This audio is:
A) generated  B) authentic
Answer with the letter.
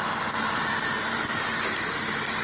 B